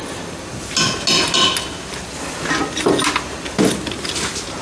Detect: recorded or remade recorded